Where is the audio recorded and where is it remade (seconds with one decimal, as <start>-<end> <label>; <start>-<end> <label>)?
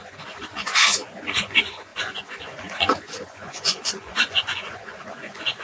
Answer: 0.0-5.6 remade